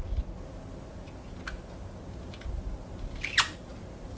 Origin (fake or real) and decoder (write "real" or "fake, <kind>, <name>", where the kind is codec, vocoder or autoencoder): real